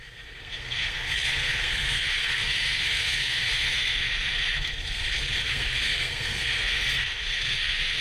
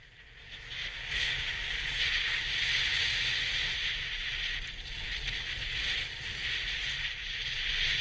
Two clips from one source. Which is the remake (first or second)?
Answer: first